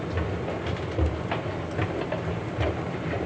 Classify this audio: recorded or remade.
recorded